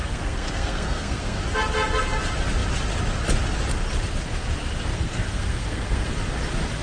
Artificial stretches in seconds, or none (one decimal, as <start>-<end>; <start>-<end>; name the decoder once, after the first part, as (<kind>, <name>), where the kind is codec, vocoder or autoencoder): 0.0-1.4 (codec, SNAC); 4.9-6.1